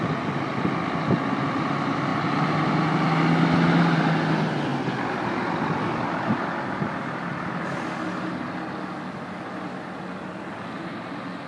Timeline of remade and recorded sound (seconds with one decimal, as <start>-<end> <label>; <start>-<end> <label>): 0.0-11.5 recorded